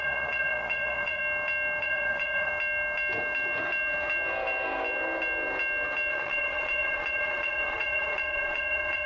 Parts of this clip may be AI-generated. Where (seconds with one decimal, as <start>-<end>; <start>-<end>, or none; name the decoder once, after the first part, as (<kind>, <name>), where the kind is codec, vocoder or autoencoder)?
0.0-1.2 (vocoder, Vocos); 1.8-2.5; 6.1-9.1